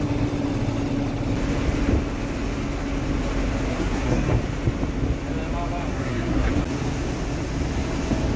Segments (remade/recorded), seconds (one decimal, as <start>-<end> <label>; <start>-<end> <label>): 0.0-3.7 recorded; 3.7-4.4 remade; 4.4-5.9 recorded; 5.9-6.5 remade; 6.5-8.4 recorded